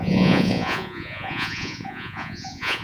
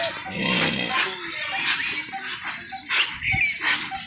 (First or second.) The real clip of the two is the second